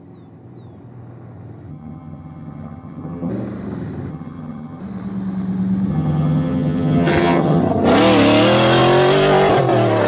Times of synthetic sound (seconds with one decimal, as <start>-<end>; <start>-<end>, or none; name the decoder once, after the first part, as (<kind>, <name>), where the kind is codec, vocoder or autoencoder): 1.7-3.3 (vocoder, HiFi-GAN); 4.1-4.8; 5.9-7.6